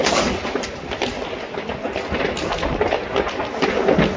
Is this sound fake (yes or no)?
no